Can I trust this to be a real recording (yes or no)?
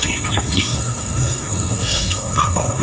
no